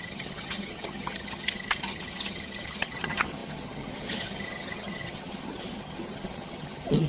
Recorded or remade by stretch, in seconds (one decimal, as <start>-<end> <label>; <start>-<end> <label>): 0.0-7.1 remade